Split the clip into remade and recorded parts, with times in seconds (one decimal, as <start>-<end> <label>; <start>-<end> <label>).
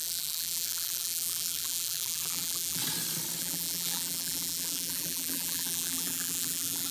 0.0-2.8 remade; 2.8-3.4 recorded; 3.4-6.9 remade